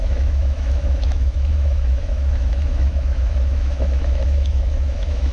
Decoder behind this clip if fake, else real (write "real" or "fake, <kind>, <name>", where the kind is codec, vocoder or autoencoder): fake, autoencoder, DAC-VAE